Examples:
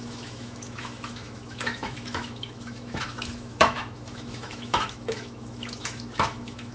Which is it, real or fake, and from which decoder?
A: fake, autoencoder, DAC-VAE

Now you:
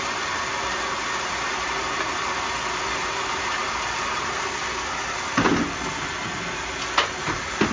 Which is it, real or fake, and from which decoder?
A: real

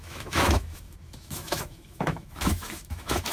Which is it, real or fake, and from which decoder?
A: fake, autoencoder, DAC-VAE